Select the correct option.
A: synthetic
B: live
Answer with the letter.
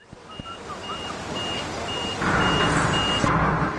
B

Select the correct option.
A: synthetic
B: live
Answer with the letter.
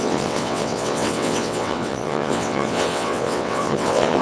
A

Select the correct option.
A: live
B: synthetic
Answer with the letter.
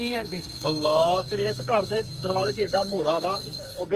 B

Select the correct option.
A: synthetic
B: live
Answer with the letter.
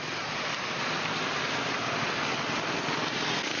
B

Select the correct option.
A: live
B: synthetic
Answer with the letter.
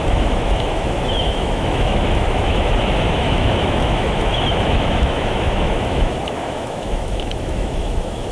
B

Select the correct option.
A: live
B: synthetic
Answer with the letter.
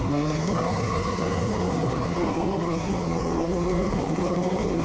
B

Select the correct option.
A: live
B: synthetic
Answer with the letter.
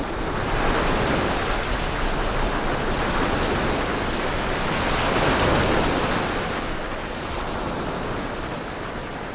A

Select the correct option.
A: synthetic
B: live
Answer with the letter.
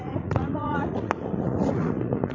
A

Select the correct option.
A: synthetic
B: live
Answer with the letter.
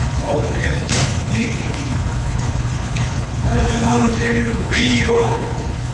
A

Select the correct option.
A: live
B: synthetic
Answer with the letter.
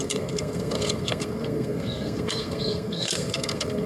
B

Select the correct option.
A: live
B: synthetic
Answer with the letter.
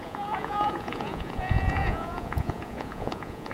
B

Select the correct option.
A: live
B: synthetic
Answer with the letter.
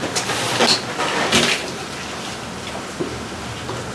A